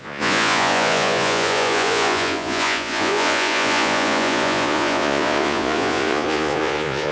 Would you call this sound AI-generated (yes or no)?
yes